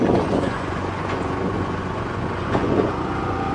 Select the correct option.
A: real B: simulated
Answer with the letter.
B